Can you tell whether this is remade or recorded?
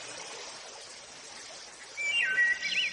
recorded